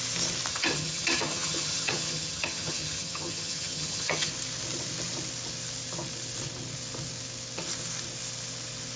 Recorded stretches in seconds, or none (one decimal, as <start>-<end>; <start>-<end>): 0.0-0.5; 4.3-9.0